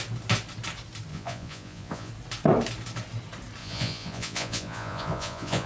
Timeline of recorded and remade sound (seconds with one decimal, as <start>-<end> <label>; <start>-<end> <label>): 0.0-1.1 recorded; 1.1-2.1 remade; 2.1-3.6 recorded; 3.6-5.7 remade